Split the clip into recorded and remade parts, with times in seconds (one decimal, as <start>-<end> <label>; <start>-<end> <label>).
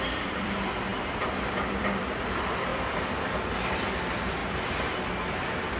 0.0-4.4 remade; 4.4-5.8 recorded